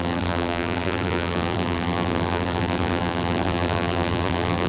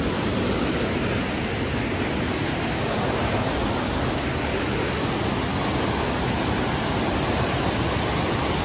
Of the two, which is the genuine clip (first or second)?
second